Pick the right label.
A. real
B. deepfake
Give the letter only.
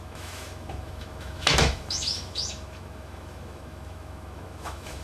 B